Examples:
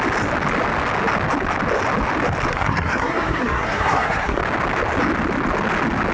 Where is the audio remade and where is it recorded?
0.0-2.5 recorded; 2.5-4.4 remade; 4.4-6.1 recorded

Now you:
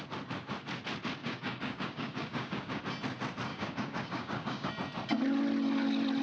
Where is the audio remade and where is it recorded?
0.0-1.2 recorded; 1.2-2.8 remade; 2.8-3.5 recorded; 3.5-4.7 remade; 4.7-6.2 recorded

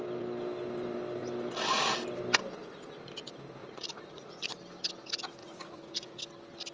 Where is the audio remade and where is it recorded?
0.0-3.6 recorded; 3.6-4.5 remade; 4.5-5.4 recorded; 5.4-6.2 remade; 6.2-6.7 recorded

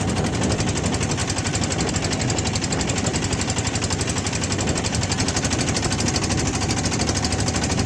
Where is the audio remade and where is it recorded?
0.0-7.9 recorded